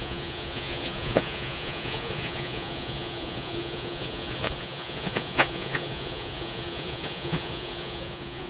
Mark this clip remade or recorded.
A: remade